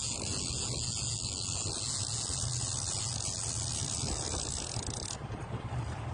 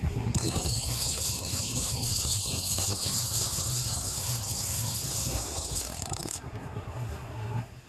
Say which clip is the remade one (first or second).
second